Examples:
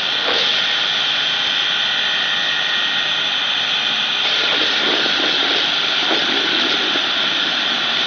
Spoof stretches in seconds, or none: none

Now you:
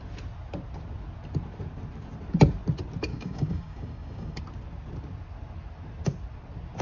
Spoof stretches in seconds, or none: 3.1-4.4

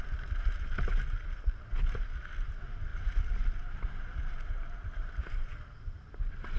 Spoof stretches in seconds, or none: none